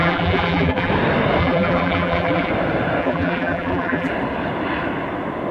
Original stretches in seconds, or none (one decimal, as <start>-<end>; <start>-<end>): 0.9-1.4; 2.5-3.0; 4.1-5.5